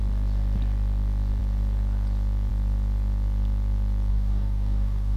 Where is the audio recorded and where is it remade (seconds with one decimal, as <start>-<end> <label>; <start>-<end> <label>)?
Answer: 0.0-4.1 recorded; 4.1-5.2 remade